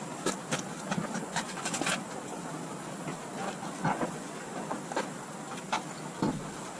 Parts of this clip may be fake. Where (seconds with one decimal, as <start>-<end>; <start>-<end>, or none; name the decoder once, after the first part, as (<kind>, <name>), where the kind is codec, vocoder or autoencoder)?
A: 1.2-2.0 (vocoder, Vocos); 3.8-4.8